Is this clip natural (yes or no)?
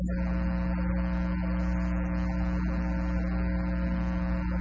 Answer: yes